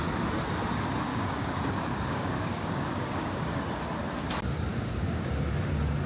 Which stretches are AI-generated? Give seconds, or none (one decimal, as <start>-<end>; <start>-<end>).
1.1-3.6; 4.7-5.3